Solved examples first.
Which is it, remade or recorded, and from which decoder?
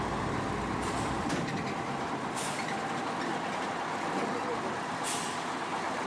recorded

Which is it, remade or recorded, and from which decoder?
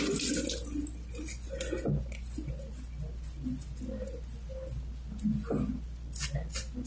recorded